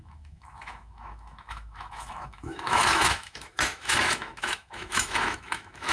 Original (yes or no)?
no